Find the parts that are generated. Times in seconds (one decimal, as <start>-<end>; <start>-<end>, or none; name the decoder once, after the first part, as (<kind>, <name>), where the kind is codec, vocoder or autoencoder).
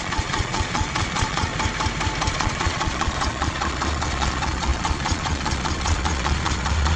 0.0-1.5 (vocoder, Vocos); 2.3-7.0